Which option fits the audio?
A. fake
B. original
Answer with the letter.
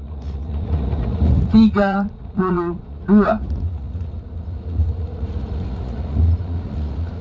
A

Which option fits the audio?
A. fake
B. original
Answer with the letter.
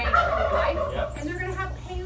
B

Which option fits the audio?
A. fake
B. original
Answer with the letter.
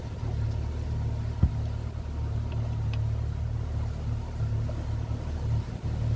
B